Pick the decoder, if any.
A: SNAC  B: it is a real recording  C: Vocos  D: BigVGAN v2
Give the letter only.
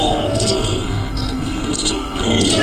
A